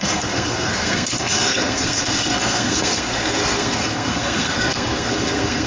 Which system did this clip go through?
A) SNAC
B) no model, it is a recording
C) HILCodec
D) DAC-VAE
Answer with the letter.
A